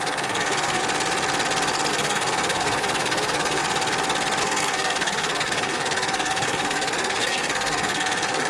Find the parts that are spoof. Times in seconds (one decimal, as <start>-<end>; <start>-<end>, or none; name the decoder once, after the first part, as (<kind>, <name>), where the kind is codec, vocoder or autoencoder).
0.0-0.8 (codec, SNAC); 1.9-3.6; 4.4-8.5